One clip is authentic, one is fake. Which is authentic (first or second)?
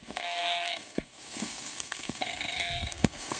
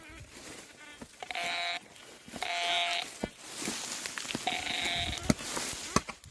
second